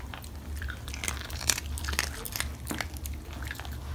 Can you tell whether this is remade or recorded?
recorded